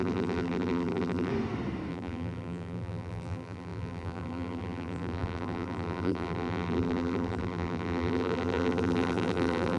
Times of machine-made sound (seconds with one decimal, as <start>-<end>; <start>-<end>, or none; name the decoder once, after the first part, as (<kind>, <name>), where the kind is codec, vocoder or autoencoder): 0.0-1.3 (vocoder, BigVGAN v2); 1.9-9.8

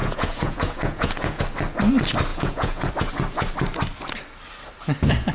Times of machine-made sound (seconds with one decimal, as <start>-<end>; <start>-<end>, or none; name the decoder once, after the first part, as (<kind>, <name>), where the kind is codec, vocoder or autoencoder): 0.0-1.4 (vocoder, Vocos); 2.3-2.9

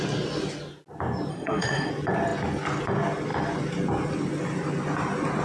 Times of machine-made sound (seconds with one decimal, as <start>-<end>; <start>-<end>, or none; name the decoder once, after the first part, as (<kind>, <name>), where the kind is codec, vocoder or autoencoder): 1.3-1.9 (codec, SNAC)

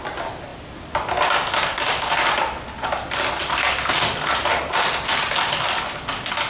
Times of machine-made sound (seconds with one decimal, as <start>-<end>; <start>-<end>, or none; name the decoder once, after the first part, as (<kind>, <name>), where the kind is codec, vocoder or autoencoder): none

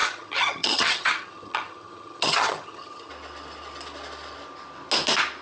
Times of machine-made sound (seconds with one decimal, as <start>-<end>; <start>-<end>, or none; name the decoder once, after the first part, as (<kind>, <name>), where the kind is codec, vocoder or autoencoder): 0.0-3.1 (vocoder, HiFi-GAN)

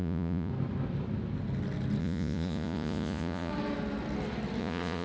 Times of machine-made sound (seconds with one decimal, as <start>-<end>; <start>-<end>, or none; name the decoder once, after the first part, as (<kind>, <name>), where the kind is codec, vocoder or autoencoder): 0.0-0.5 (vocoder, Vocos); 2.0-3.5; 4.6-5.0